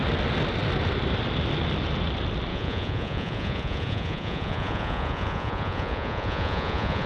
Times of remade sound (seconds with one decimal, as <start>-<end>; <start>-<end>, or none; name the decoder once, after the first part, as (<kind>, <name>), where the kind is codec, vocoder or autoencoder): 2.5-7.1 (vocoder, Vocos)